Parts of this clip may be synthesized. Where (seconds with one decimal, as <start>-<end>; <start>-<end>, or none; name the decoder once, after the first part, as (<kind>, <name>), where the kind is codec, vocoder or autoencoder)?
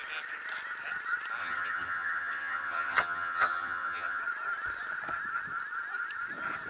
1.4-4.2 (vocoder, HiFi-GAN)